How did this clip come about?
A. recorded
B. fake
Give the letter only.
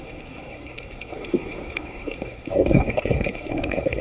B